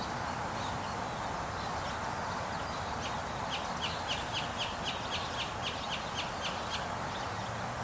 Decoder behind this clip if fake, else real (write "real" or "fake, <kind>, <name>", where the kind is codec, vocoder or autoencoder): real